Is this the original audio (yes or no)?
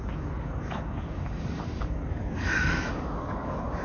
no